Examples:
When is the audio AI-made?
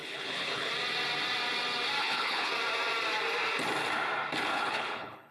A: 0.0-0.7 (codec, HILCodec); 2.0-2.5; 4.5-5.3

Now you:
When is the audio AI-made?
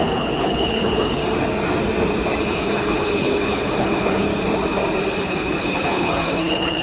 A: 0.0-1.2 (codec, HILCodec); 2.4-4.3; 5.2-6.8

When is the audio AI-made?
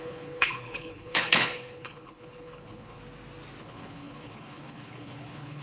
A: 0.0-3.0 (codec, HILCodec); 3.6-5.6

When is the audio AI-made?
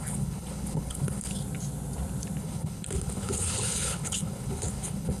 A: 0.0-1.3 (codec, HILCodec); 2.4-5.2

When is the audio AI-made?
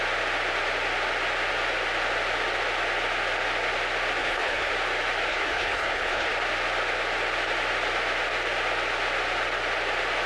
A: 4.2-4.7 (codec, HILCodec); 5.3-6.3